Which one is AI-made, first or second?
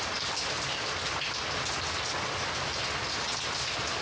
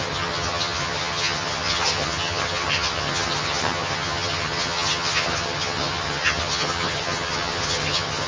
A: second